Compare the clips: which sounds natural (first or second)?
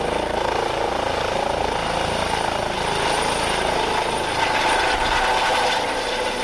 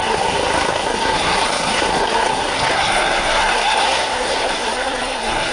first